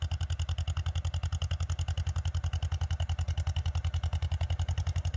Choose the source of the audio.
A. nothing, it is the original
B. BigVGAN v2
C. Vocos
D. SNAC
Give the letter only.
A